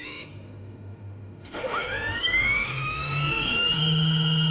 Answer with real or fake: fake